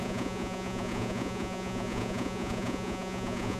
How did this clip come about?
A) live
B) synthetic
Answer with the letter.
B